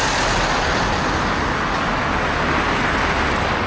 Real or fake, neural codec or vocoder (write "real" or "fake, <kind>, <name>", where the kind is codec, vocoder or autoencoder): real